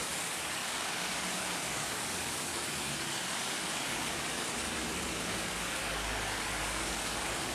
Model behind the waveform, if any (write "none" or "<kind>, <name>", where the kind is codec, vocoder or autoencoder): codec, DAC